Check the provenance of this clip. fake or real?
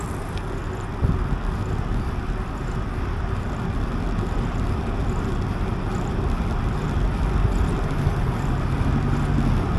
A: real